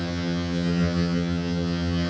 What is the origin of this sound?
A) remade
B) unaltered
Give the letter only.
A